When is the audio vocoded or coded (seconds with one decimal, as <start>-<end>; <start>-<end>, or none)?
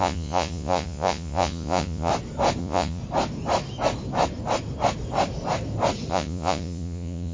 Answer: 0.0-2.1; 2.6-3.0; 6.1-7.3